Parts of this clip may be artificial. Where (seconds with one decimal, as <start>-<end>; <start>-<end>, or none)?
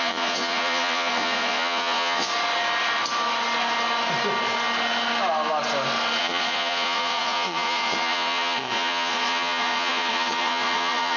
0.0-2.3; 6.2-11.2